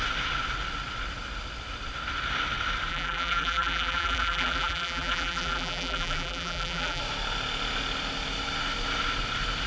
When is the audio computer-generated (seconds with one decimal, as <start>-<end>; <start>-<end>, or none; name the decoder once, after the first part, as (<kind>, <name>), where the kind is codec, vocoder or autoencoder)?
2.9-7.0 (vocoder, BigVGAN v2)